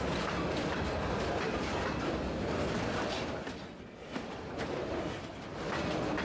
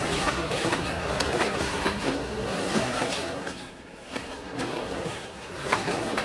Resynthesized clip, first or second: second